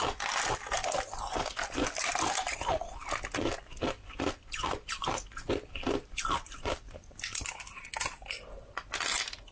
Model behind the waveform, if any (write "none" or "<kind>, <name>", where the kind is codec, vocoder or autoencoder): none